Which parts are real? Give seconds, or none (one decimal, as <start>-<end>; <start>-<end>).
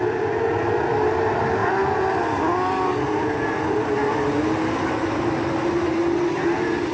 0.0-6.9